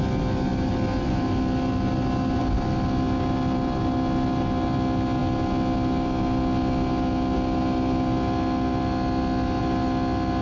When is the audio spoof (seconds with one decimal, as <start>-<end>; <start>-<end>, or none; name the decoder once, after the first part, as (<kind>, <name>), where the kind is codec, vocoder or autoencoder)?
none